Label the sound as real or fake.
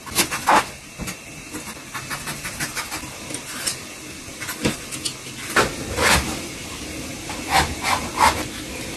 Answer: real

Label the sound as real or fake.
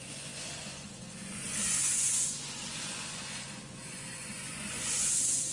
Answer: fake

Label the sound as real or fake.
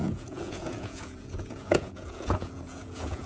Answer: fake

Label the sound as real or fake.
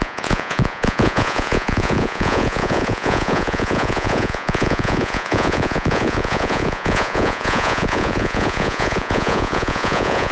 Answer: fake